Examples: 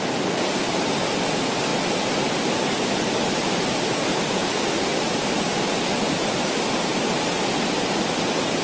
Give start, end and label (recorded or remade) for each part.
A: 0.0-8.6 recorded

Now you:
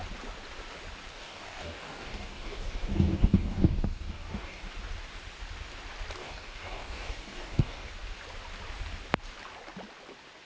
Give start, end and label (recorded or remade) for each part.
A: 0.0-1.1 recorded; 1.1-4.7 remade; 4.7-6.2 recorded; 6.2-7.9 remade; 7.9-10.4 recorded

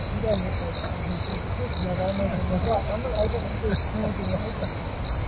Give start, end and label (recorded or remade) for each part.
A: 0.0-1.3 recorded; 1.3-3.6 remade; 3.6-5.3 recorded

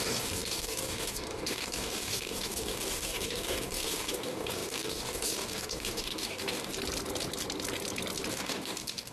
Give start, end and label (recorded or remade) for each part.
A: 0.0-6.7 remade; 6.7-8.3 recorded; 8.3-9.1 remade

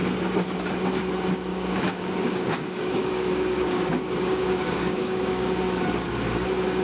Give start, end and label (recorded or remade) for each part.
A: 0.0-1.5 recorded; 1.5-5.6 remade; 5.6-6.8 recorded

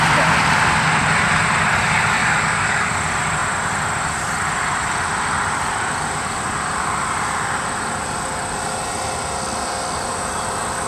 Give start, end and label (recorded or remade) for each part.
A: 0.0-2.2 recorded; 2.2-2.9 remade; 2.9-10.9 recorded

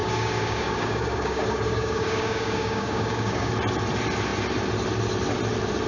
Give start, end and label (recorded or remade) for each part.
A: 0.0-3.5 remade; 3.5-5.9 recorded

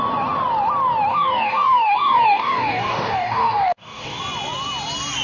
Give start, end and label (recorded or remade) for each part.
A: 0.0-1.1 recorded; 1.1-4.2 remade; 4.2-5.2 recorded